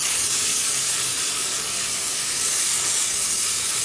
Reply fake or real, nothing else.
fake